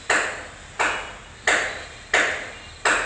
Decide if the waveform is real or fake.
real